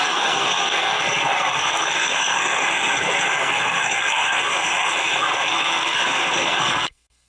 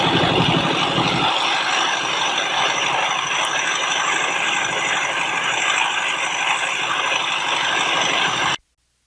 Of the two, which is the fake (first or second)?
first